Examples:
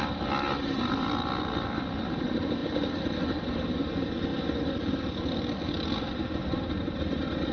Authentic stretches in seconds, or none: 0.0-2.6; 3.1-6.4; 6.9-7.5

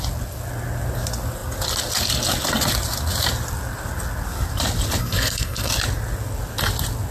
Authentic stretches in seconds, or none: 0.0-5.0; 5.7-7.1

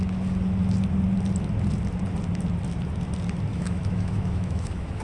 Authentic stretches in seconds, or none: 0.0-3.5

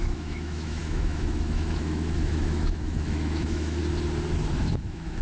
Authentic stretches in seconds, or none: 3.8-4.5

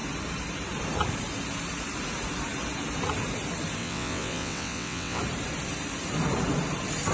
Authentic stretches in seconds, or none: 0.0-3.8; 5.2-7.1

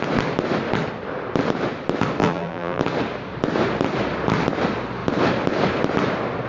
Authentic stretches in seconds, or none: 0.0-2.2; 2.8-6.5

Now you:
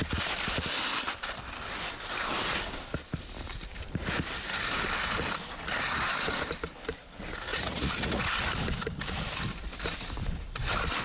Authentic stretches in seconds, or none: 0.0-7.5; 8.3-11.0